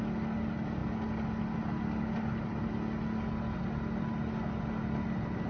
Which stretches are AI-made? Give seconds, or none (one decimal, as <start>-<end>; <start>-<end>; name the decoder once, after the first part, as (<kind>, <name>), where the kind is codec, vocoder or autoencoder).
none